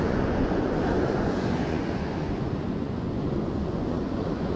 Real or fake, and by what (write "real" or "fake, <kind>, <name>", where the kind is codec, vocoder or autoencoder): fake, vocoder, Vocos